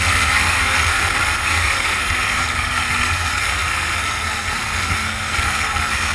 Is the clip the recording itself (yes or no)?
no